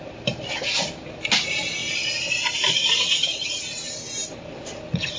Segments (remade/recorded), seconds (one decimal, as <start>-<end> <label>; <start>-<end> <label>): 0.0-1.8 recorded; 1.8-3.6 remade; 3.6-5.2 recorded